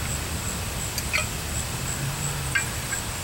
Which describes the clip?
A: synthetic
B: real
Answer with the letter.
B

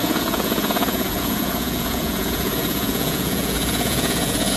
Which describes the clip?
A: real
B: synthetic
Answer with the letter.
B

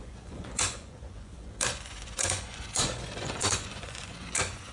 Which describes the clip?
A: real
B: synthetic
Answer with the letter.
B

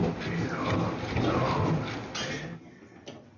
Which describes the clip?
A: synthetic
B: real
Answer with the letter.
B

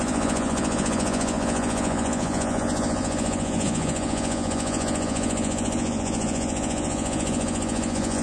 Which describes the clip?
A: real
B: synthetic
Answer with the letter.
B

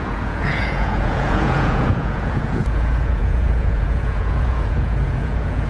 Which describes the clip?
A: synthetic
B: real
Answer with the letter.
A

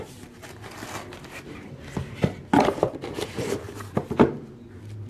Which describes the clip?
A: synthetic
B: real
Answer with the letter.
B